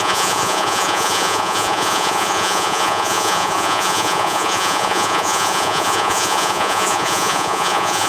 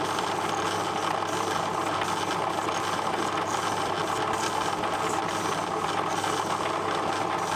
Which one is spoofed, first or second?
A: first